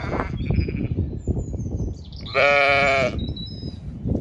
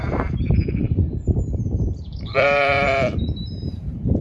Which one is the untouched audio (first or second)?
first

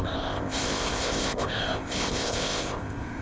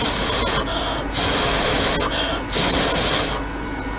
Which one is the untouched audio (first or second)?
second